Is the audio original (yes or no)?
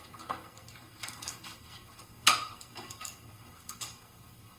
no